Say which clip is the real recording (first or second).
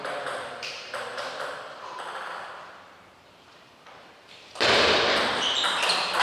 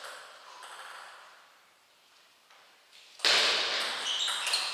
second